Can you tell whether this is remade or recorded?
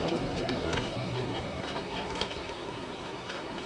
remade